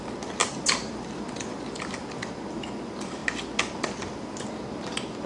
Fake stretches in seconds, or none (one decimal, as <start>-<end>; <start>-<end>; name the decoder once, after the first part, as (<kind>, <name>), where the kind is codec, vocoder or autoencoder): 0.4-2.1 (vocoder, BigVGAN v2)

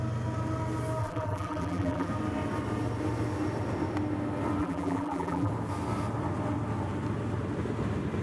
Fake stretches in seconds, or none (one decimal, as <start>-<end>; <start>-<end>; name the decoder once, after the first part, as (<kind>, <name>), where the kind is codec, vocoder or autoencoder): 1.0-2.1 (vocoder, BigVGAN v2); 4.6-5.5

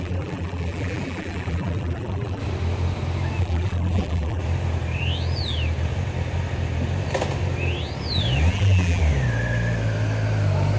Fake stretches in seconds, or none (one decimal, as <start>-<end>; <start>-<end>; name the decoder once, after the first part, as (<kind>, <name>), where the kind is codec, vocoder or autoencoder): 0.0-2.4 (vocoder, BigVGAN v2); 3.4-4.4; 8.5-9.0

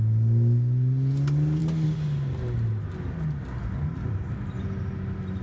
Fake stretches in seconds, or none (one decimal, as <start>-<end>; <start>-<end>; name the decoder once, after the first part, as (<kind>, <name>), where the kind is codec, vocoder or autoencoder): none